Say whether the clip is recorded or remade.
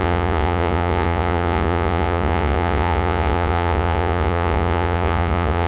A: remade